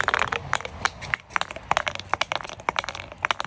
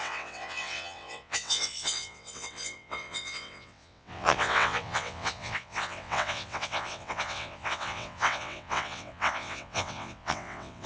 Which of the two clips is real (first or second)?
first